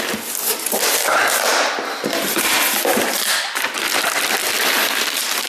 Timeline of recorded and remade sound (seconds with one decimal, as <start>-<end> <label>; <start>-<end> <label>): 0.0-5.5 recorded